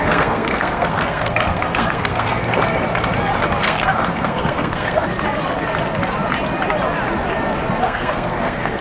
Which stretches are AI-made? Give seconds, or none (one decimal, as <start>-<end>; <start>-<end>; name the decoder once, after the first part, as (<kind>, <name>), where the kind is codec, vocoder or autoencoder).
0.0-2.6 (codec, SNAC); 3.6-5.1; 7.8-8.8